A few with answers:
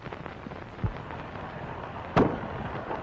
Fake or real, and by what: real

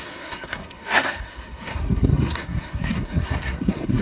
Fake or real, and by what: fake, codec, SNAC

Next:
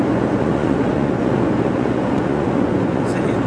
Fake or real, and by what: fake, vocoder, Vocos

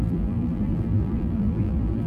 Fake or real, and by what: fake, vocoder, BigVGAN v2